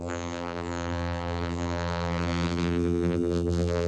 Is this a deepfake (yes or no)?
yes